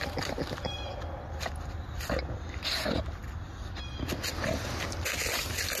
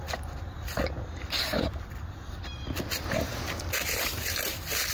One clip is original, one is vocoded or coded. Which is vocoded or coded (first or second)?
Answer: second